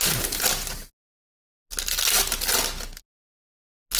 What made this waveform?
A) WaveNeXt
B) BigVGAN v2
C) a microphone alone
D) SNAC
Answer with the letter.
C